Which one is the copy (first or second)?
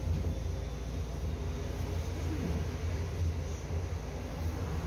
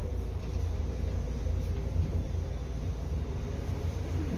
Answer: second